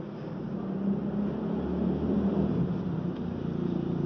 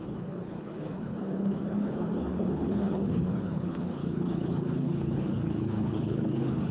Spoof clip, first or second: second